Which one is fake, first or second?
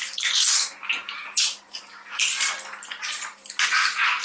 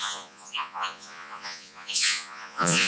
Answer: second